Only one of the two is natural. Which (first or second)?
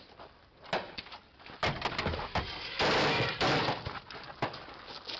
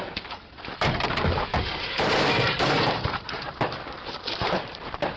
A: first